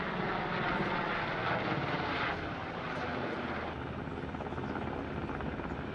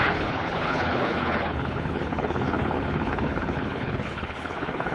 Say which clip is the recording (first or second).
first